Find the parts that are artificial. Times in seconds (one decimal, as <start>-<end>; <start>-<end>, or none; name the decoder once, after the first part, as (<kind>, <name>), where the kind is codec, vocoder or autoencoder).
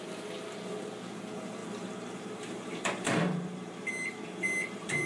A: 1.6-5.1 (vocoder, BigVGAN v2)